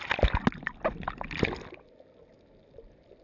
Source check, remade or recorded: recorded